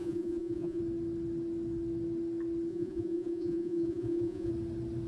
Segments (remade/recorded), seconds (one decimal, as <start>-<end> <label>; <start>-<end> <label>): 0.0-0.8 remade; 0.8-2.7 recorded; 2.7-4.5 remade; 4.5-5.1 recorded